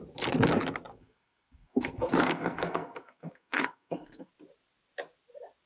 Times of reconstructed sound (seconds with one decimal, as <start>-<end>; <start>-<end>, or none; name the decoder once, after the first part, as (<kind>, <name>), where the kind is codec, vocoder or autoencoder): 0.9-4.3 (codec, SNAC)